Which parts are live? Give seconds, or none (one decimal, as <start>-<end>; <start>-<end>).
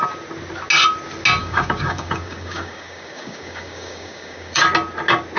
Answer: 0.0-1.4; 4.6-5.4